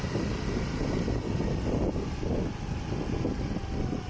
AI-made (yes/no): no